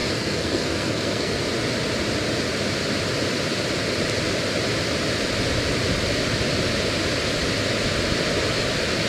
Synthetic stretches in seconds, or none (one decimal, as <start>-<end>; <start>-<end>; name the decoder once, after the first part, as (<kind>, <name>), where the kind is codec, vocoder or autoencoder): 0.0-1.4 (codec, SNAC)